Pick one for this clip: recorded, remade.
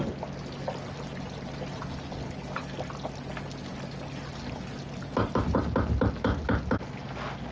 recorded